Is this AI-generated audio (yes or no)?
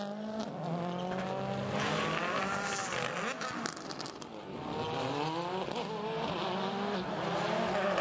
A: no